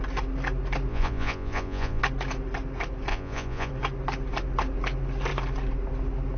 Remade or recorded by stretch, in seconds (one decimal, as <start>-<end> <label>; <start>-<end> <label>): 0.0-0.9 recorded; 0.9-2.0 remade; 2.0-3.1 recorded; 3.1-3.7 remade; 3.7-6.4 recorded